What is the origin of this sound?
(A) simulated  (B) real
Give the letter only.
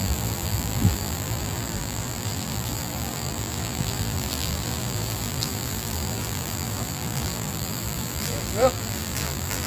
A